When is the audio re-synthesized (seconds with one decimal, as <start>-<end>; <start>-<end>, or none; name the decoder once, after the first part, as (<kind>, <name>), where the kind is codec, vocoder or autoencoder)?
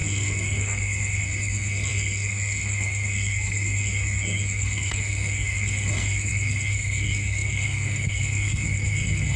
0.0-9.4 (codec, SNAC)